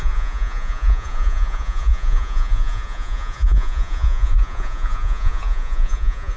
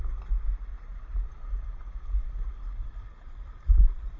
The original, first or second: second